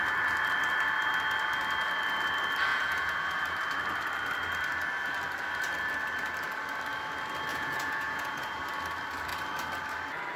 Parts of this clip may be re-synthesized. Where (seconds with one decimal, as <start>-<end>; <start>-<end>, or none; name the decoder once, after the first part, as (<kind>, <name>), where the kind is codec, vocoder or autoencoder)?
2.7-3.4 (vocoder, Vocos); 7.5-8.6